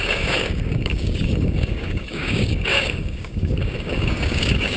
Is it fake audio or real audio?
fake